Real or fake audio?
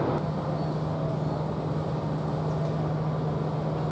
real